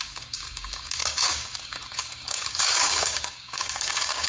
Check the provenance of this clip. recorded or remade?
remade